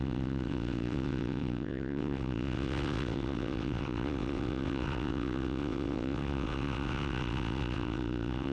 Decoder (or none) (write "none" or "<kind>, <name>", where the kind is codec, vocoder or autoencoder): vocoder, WaveNeXt